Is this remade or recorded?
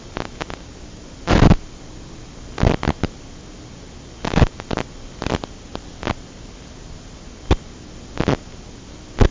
recorded